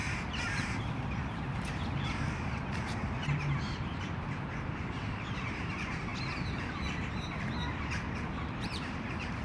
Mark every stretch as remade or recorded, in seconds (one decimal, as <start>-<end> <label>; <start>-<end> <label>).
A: 0.0-6.1 remade; 6.1-8.6 recorded; 8.6-9.4 remade